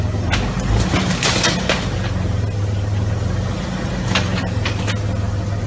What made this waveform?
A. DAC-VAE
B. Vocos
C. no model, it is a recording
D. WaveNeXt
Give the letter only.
C